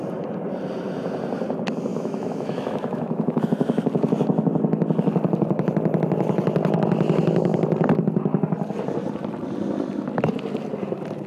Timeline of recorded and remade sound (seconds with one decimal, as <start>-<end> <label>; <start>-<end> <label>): 0.0-1.9 recorded; 1.9-3.4 remade; 3.4-11.3 recorded